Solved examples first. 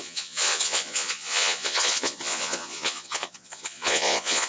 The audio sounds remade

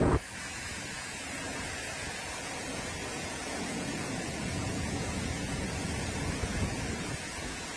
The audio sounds remade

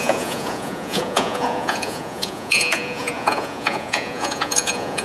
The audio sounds remade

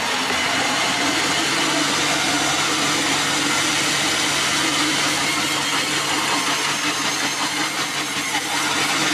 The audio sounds recorded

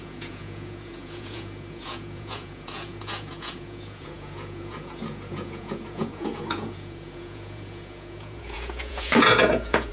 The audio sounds remade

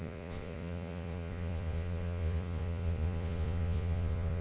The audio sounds remade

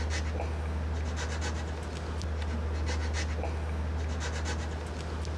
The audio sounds recorded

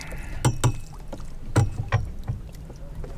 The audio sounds recorded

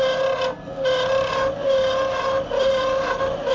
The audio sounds recorded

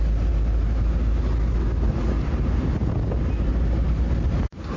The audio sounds recorded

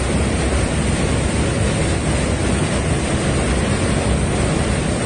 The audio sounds recorded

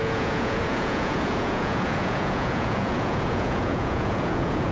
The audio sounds remade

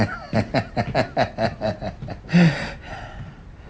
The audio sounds recorded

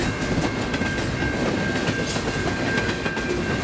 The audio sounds recorded